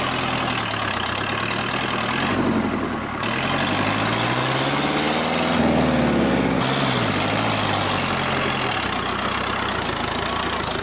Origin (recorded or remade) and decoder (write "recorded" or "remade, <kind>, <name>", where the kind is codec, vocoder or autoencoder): recorded